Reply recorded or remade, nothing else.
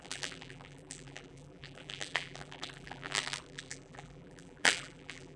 remade